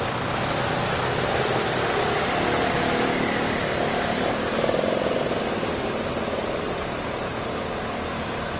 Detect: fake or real real